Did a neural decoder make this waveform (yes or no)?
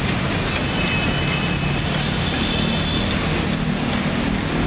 no